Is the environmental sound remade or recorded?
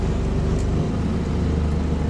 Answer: recorded